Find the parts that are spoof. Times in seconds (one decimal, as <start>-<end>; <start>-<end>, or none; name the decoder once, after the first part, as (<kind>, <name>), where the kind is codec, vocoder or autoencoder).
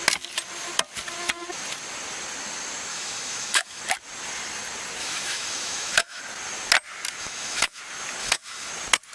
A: 2.9-3.8 (autoencoder, DAC-VAE); 5.0-6.2; 7.2-7.8; 8.2-8.7